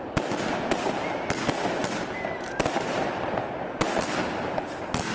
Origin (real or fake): real